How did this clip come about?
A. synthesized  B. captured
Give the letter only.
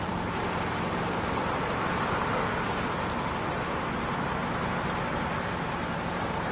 B